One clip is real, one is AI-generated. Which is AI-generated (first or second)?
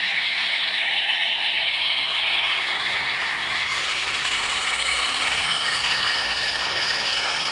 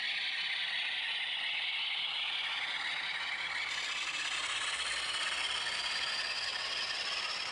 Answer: first